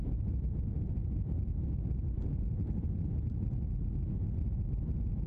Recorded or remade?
recorded